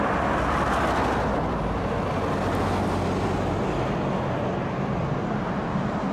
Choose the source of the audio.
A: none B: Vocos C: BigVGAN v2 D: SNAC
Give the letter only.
A